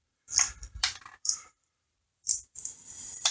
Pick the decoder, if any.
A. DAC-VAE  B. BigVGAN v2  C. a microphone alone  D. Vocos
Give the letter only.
B